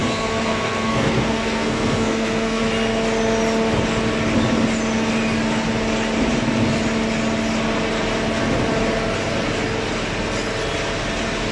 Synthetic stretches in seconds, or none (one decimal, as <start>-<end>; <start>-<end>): 0.0-2.6